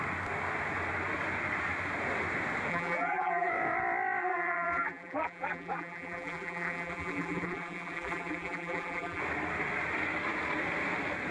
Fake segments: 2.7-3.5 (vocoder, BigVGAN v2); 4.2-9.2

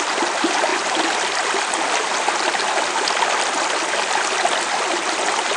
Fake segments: none